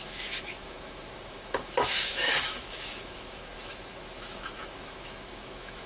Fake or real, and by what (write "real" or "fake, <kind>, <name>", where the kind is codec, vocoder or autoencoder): fake, autoencoder, DAC-VAE